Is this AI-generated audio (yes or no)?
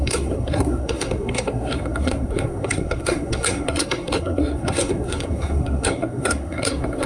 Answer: yes